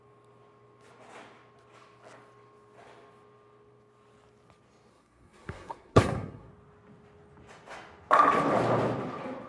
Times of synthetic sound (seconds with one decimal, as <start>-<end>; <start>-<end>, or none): 4.9-6.5